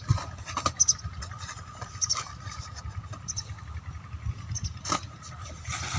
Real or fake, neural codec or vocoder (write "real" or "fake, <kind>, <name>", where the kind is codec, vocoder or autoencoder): real